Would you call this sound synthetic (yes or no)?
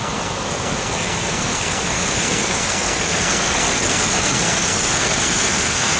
yes